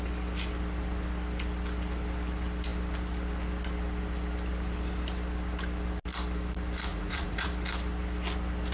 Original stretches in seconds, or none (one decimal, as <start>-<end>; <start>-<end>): 0.0-6.9; 7.5-8.7

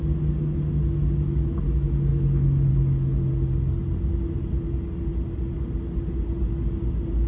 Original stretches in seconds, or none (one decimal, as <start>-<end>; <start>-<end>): 0.0-2.1; 2.7-7.3

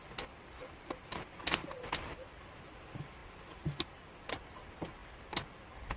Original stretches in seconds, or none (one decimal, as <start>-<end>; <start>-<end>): 0.0-6.0

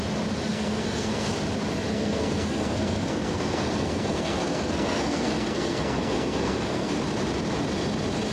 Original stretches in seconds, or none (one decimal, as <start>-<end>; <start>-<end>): 0.0-0.5; 1.3-1.9; 6.9-8.3